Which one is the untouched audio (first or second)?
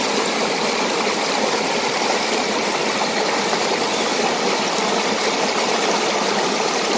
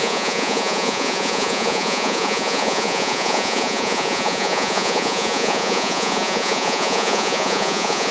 first